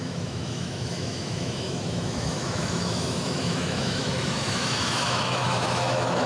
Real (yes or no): no